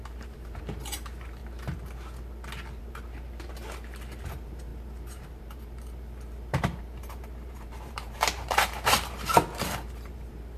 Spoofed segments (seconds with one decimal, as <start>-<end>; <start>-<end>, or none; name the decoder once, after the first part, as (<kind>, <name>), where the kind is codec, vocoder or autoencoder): 0.0-1.4 (vocoder, BigVGAN v2); 2.8-10.6